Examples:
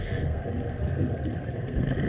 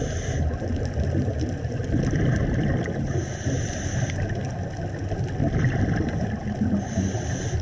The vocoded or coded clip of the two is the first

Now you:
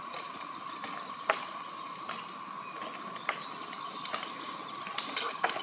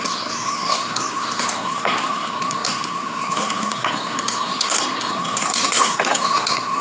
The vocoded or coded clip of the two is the second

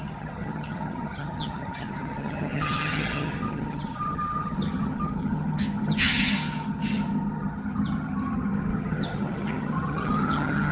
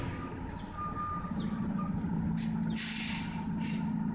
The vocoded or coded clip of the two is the first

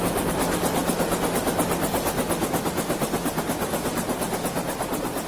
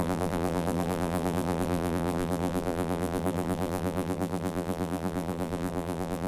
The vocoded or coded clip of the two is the second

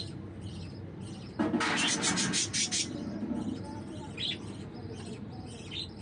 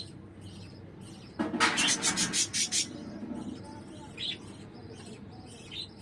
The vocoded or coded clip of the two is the first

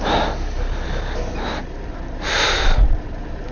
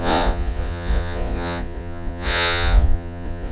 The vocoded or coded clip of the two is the second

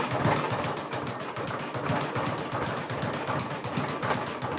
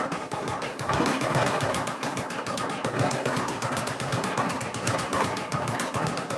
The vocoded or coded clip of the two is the second